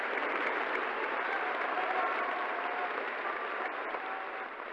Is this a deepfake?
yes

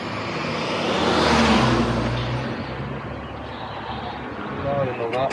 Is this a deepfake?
no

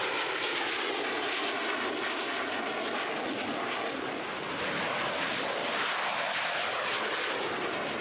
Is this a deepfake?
no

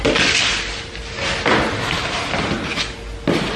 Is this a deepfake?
no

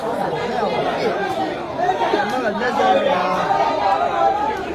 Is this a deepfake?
yes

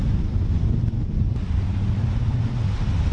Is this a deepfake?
no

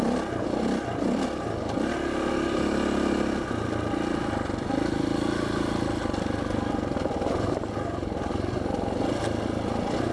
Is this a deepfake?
no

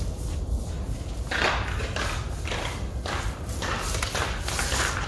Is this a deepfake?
no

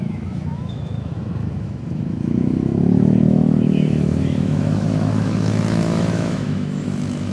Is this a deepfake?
yes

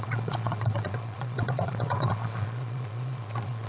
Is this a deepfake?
yes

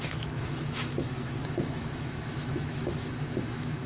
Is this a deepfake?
yes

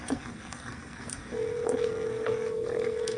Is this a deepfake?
yes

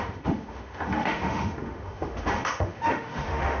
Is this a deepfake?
yes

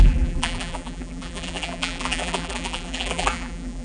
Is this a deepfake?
yes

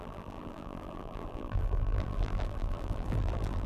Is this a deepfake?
yes